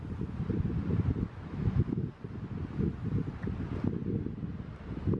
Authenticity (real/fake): real